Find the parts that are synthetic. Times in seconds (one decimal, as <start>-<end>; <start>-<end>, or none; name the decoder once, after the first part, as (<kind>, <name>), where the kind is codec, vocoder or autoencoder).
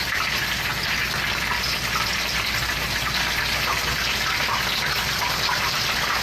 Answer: none